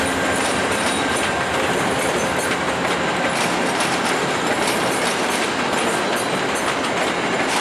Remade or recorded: recorded